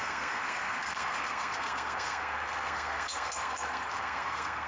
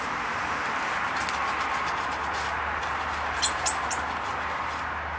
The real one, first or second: second